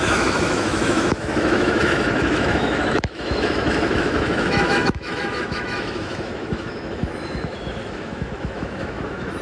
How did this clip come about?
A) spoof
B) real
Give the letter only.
A